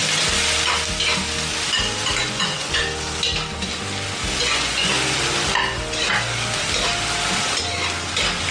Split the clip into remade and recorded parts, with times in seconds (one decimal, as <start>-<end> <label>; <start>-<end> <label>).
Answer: 0.0-2.2 recorded; 2.2-2.8 remade; 2.8-4.4 recorded; 4.4-4.9 remade; 4.9-8.5 recorded